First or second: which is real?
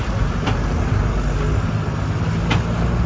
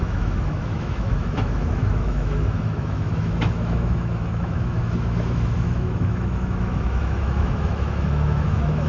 first